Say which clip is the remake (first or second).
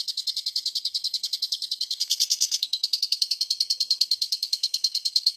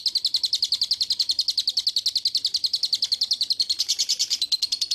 first